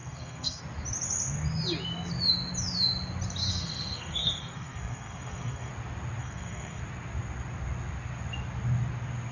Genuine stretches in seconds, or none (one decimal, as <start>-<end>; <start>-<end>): 0.6-3.5; 5.7-6.2; 6.8-9.3